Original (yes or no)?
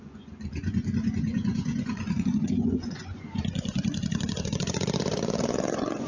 no